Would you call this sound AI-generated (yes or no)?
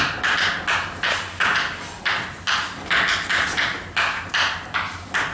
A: no